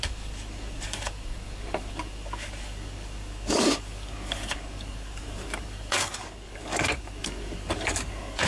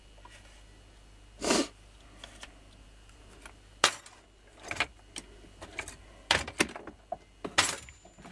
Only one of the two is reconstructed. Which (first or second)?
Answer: first